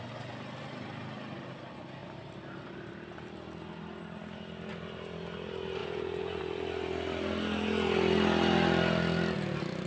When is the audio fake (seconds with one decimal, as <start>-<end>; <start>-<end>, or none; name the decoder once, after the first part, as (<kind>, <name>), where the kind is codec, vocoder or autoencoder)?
5.8-6.4 (vocoder, Vocos)